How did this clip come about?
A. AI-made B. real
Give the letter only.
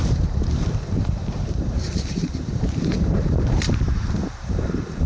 A